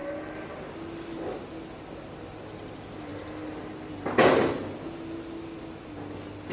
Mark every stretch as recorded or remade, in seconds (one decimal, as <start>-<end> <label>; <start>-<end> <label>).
0.0-6.5 recorded